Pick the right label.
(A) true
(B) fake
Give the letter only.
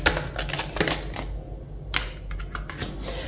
A